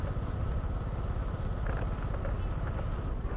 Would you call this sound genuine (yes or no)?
yes